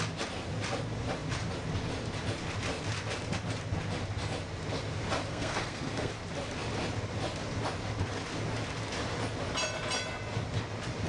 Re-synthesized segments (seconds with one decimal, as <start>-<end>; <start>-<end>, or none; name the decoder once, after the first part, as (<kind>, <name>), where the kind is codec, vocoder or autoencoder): 5.3-6.1 (codec, SNAC)